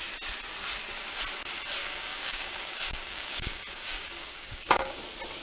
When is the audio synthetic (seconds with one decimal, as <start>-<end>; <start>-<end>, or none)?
1.8-5.0